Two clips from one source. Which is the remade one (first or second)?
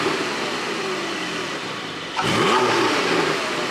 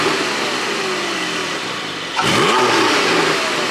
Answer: first